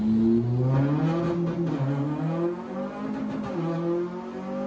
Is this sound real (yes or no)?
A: yes